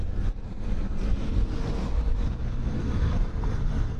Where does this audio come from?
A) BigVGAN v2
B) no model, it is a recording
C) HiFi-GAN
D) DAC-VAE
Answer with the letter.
A